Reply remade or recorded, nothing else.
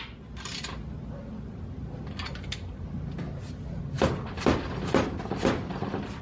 recorded